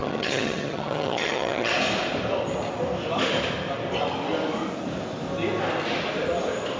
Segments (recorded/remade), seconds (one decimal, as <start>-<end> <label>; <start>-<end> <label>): 0.0-1.7 remade; 1.7-6.8 recorded